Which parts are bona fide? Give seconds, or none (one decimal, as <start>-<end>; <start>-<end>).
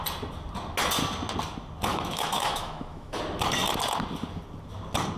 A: 0.0-1.9; 3.2-5.2